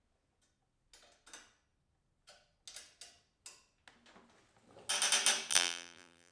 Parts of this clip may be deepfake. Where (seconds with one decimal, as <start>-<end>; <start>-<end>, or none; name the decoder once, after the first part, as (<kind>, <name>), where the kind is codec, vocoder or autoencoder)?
5.5-6.3 (vocoder, BigVGAN v2)